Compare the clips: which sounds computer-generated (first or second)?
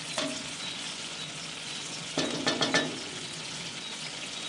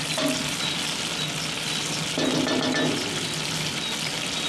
first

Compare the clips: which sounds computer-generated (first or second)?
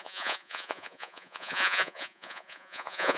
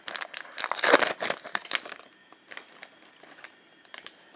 first